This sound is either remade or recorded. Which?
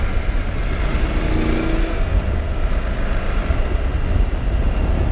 recorded